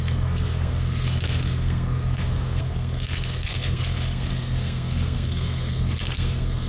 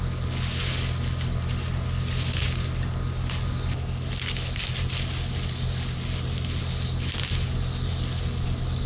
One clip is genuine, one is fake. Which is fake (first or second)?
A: first